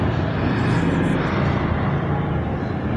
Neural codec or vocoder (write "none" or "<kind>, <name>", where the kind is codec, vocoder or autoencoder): none